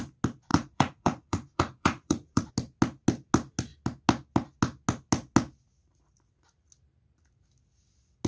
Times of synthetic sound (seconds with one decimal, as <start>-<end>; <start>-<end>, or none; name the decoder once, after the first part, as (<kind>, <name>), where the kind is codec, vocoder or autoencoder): 0.5-2.5 (vocoder, Vocos)